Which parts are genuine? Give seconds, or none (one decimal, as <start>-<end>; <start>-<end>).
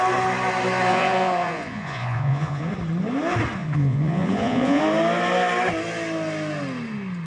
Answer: 0.0-0.9; 2.7-3.6; 4.8-7.3